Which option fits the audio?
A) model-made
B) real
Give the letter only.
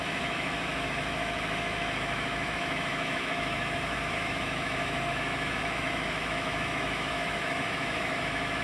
A